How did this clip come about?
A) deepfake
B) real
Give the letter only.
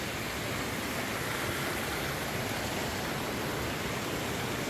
B